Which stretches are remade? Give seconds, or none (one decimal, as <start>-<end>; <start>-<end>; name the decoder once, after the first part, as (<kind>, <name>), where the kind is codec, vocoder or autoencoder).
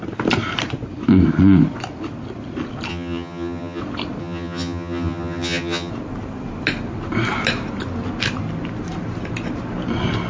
2.9-3.8 (vocoder, HiFi-GAN); 4.2-5.9